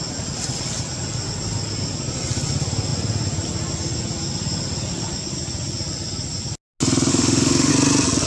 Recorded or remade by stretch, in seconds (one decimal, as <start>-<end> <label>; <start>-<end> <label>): 0.0-7.1 recorded; 7.1-7.7 remade; 7.7-8.3 recorded